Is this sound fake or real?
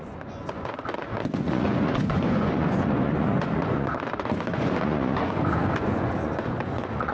fake